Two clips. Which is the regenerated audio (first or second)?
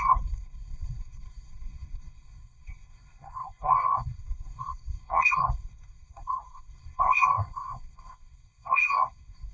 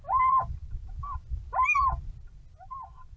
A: first